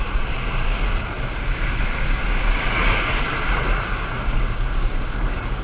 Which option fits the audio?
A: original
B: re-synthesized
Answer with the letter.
B